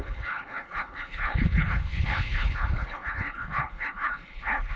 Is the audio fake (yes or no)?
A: yes